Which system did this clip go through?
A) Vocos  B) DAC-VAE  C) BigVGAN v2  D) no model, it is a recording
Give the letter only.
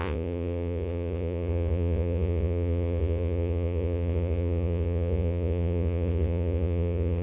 A